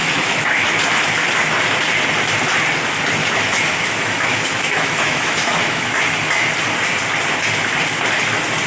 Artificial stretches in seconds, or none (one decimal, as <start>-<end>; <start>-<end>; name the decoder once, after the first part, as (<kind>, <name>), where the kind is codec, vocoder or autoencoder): 0.0-0.7 (autoencoder, DAC-VAE); 3.2-6.0